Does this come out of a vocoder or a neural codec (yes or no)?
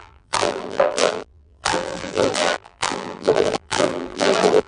yes